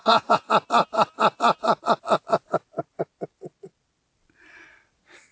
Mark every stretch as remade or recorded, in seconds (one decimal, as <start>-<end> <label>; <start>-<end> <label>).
0.0-0.5 remade; 0.5-5.3 recorded